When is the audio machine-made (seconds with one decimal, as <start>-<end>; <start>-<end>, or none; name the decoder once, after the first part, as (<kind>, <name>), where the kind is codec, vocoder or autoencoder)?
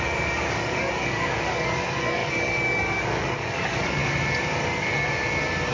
0.0-4.0 (codec, DAC)